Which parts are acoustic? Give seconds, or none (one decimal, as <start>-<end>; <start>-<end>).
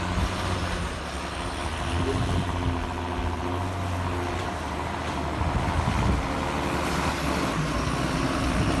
0.0-4.4; 5.2-8.8